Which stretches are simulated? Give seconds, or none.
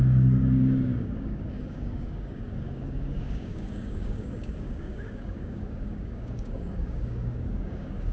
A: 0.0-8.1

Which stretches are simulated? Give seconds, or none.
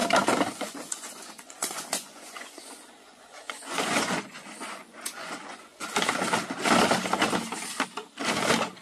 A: 0.5-5.9